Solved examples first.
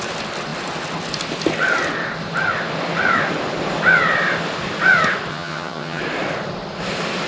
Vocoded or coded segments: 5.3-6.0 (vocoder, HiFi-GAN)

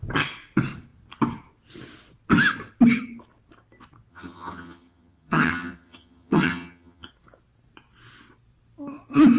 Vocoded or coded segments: 4.1-7.1 (vocoder, HiFi-GAN)

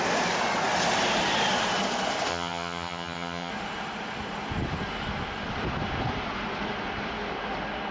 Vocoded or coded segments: 2.3-3.5 (vocoder, HiFi-GAN)

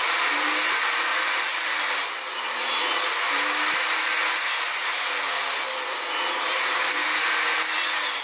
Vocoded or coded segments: none

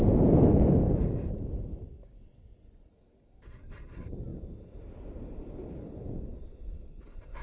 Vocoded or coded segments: none

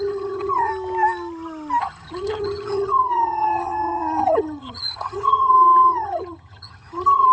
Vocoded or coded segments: 0.0-0.7 (vocoder, HiFi-GAN); 1.8-7.3